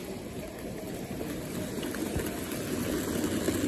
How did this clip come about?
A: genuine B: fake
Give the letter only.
A